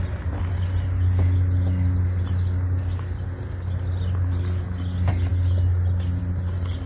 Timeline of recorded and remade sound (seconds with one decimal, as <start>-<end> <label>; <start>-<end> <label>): 0.0-6.9 recorded